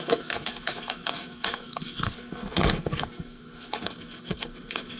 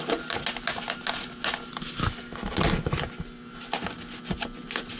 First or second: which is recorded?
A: second